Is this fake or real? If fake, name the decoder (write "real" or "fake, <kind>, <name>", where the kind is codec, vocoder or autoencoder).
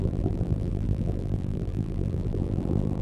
fake, vocoder, BigVGAN v2